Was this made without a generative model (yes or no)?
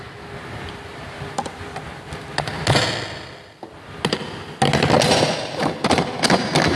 yes